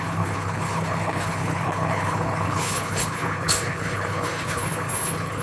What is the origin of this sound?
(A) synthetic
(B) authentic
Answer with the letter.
A